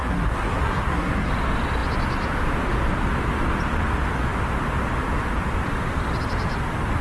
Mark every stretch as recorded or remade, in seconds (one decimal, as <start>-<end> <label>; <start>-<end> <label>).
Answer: 0.0-1.3 remade; 1.3-7.0 recorded